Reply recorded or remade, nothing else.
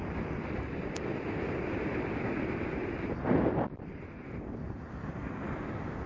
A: remade